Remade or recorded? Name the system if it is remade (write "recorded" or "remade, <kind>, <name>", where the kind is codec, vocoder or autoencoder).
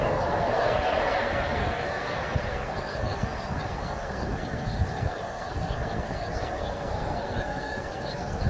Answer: remade, codec, SNAC